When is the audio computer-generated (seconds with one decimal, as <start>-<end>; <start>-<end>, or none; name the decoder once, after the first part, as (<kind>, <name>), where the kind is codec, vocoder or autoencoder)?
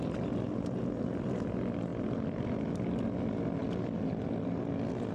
none